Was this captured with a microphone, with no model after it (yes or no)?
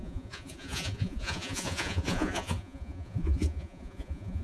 no